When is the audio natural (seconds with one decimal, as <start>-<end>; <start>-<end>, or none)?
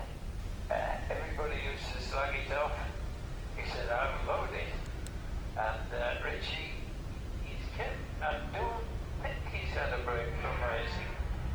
0.0-3.8; 5.5-11.5